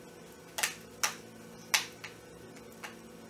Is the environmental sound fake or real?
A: real